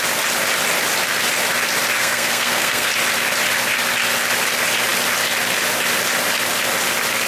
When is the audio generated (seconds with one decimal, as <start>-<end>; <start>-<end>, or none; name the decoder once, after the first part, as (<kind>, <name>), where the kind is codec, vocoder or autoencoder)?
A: 2.0-2.9 (codec, SNAC)